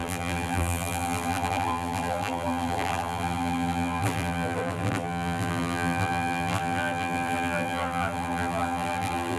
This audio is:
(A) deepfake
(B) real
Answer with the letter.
A